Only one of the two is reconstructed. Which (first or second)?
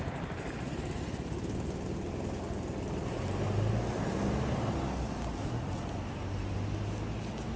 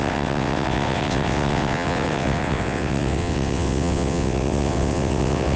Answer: second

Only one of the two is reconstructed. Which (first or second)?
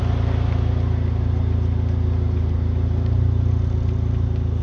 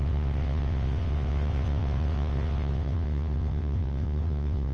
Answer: second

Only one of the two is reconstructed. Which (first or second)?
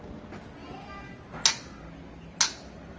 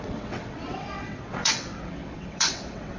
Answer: second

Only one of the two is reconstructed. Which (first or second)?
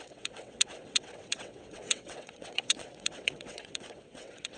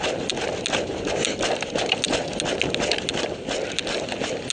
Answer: first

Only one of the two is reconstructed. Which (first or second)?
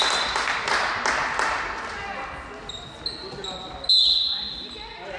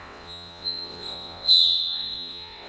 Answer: second